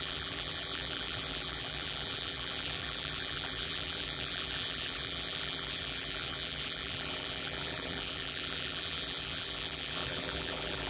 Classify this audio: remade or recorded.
remade